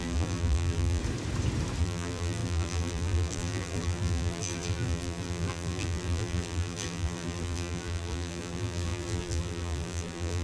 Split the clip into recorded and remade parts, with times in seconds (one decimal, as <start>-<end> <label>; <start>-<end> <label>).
0.0-1.0 remade; 1.0-1.8 recorded; 1.8-10.4 remade